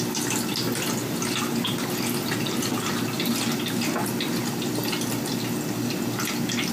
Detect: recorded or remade recorded